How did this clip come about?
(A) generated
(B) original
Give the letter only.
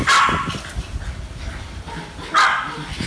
B